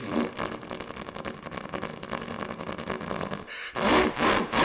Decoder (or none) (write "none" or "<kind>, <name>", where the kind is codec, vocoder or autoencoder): none